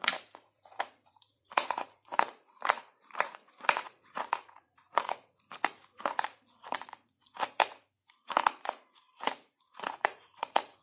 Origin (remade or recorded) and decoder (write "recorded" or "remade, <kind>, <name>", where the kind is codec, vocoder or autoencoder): remade, vocoder, Vocos